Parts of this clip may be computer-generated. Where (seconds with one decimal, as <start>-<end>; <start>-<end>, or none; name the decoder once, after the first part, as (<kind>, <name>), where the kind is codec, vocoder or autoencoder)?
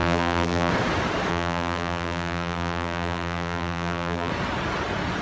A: 0.0-0.7 (vocoder, BigVGAN v2); 1.3-4.3